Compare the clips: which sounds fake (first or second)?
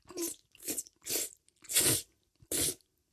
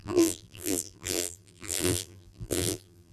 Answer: second